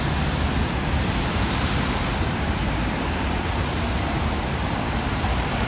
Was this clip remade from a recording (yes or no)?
no